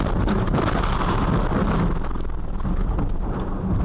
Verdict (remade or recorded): recorded